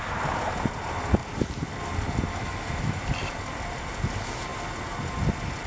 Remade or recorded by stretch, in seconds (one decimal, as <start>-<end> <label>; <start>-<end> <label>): 0.0-2.3 recorded; 2.3-3.0 remade; 3.0-5.7 recorded